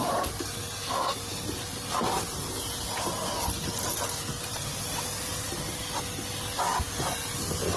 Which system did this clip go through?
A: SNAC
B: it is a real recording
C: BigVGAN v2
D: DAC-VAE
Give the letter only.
B